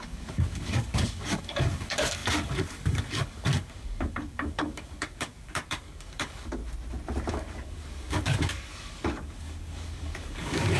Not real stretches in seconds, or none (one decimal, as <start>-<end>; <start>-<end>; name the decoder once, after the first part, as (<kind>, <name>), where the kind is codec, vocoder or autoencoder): 0.0-6.6 (codec, DAC); 7.3-10.8